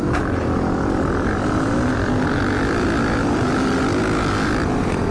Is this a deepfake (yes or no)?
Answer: no